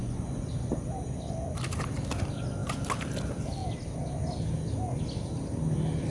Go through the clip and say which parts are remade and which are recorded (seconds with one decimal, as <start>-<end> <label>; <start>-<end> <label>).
0.0-0.5 remade; 0.5-6.1 recorded

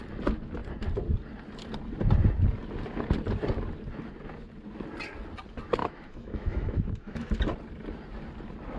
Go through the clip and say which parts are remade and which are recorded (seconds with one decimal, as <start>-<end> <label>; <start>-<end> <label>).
0.0-5.8 recorded; 5.8-7.3 remade; 7.3-8.8 recorded